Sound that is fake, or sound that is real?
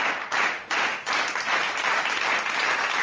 real